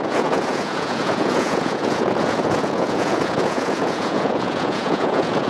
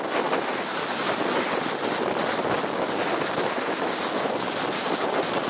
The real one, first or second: second